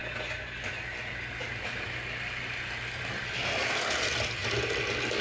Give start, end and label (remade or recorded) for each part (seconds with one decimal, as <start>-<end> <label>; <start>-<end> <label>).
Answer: 0.0-5.2 recorded